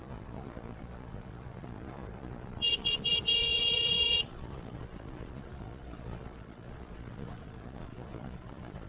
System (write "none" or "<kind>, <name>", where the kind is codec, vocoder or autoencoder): vocoder, Vocos